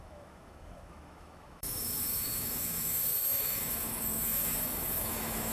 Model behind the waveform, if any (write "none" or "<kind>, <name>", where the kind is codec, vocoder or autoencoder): autoencoder, DAC-VAE